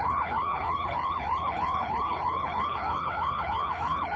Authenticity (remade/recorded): remade